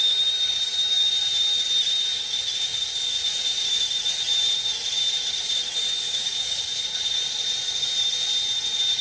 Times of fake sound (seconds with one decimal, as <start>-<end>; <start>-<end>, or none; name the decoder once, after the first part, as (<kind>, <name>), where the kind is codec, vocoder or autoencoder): 6.0-6.6 (codec, DAC)